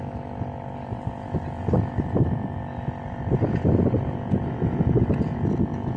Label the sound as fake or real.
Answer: real